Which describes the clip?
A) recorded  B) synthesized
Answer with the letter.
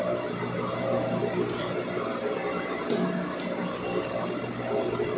A